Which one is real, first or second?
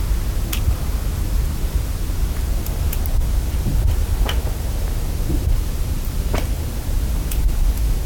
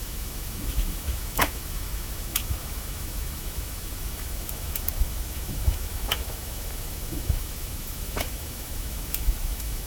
first